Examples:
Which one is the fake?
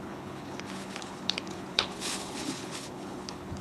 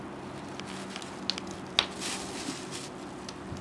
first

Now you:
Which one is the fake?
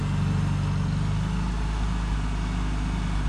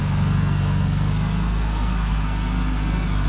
second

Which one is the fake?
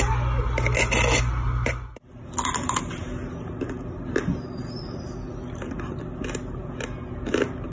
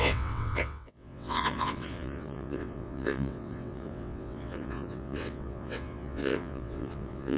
second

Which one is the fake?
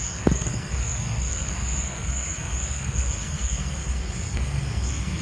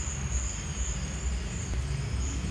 first